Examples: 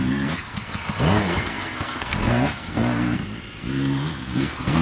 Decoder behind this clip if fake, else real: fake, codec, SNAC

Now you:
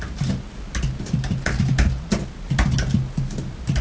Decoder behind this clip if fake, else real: real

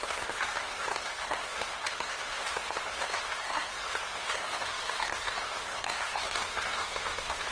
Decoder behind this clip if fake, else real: fake, codec, SNAC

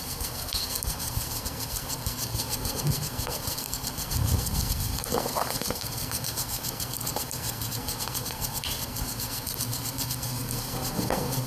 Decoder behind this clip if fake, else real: fake, codec, SNAC